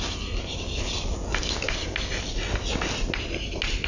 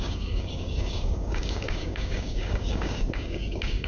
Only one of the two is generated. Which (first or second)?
second